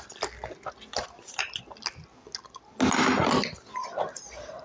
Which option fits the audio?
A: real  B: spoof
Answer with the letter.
A